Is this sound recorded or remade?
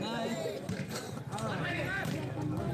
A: recorded